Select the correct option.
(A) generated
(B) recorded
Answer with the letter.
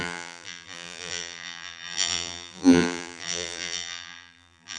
A